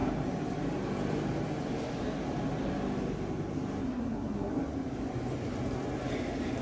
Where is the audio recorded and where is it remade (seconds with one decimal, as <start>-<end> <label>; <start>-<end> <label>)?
0.0-3.8 recorded; 3.8-4.5 remade; 4.5-6.6 recorded